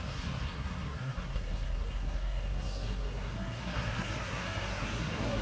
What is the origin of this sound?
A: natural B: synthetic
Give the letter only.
B